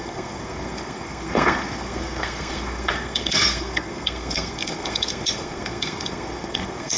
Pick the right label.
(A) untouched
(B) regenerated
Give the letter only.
B